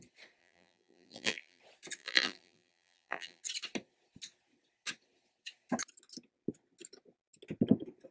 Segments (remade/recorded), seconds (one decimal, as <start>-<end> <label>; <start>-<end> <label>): 0.0-0.4 recorded; 0.4-1.6 remade; 1.6-2.0 recorded; 2.0-3.4 remade; 3.4-8.1 recorded